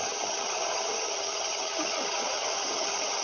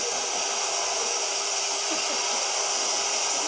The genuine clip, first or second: second